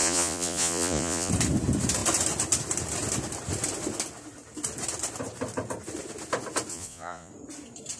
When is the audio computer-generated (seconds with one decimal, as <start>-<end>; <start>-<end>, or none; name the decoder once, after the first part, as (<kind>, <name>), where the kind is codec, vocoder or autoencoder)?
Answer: 0.0-1.3 (vocoder, Vocos); 6.7-7.3